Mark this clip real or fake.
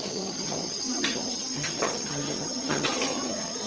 fake